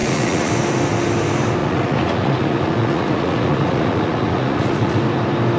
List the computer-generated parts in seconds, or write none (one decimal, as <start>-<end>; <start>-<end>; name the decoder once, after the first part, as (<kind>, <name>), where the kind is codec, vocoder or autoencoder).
0.0-0.5 (vocoder, Vocos); 1.6-5.0